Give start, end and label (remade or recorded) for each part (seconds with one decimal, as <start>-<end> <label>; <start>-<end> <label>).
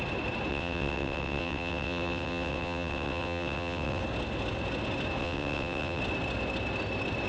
0.0-0.5 recorded; 0.5-4.0 remade; 4.0-5.2 recorded; 5.2-6.0 remade; 6.0-7.3 recorded